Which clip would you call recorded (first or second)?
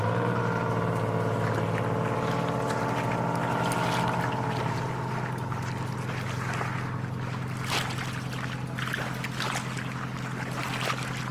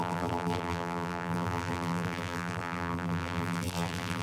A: first